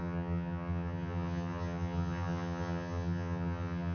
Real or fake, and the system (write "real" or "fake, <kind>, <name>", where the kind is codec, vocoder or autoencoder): fake, vocoder, HiFi-GAN